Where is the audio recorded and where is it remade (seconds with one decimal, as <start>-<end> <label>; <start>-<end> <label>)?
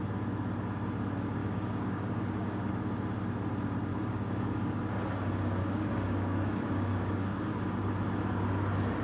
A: 0.0-1.4 recorded; 1.4-2.7 remade; 2.7-3.9 recorded; 3.9-4.8 remade; 4.8-5.6 recorded; 5.6-7.9 remade; 7.9-9.0 recorded